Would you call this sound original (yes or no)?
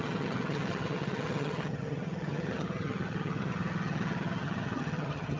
no